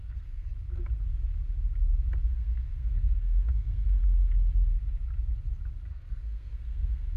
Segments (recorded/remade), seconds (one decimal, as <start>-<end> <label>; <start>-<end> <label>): 0.0-0.5 remade; 0.5-2.3 recorded; 2.3-4.0 remade; 4.0-5.9 recorded; 5.9-7.2 remade